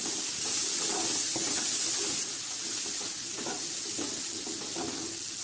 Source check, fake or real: real